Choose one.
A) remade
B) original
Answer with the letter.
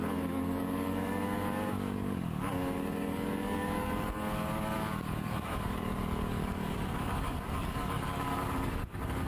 A